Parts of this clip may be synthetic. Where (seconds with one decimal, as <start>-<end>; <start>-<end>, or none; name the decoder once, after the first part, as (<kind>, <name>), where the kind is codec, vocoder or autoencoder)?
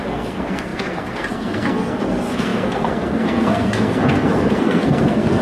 0.0-5.4 (codec, SNAC)